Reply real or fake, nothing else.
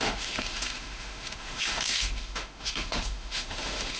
fake